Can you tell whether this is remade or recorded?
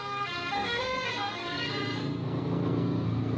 remade